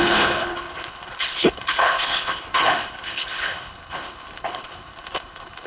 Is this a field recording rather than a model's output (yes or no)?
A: no